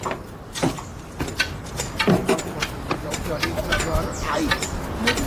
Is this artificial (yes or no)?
no